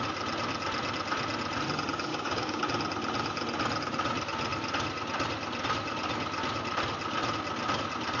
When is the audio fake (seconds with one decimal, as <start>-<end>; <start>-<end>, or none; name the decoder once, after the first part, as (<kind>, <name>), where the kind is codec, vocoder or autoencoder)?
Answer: 2.1-2.6 (codec, DAC)